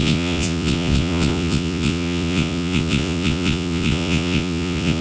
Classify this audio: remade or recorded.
remade